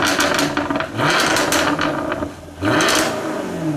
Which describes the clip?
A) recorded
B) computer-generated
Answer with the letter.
A